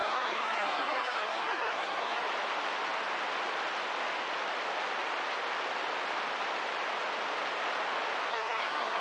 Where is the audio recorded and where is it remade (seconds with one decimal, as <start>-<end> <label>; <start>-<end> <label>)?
0.0-2.2 remade; 2.2-8.3 recorded; 8.3-9.0 remade